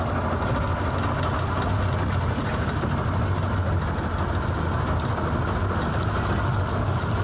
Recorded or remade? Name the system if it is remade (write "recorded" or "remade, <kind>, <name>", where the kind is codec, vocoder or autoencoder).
recorded